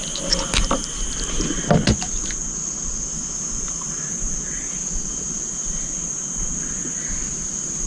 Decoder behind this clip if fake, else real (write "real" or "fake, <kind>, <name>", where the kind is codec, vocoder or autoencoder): real